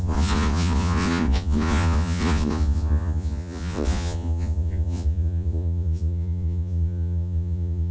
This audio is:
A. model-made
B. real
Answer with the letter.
A